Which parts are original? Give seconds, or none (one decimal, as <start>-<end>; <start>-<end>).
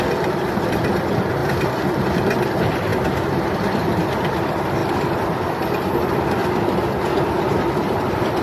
1.4-2.1; 6.4-7.3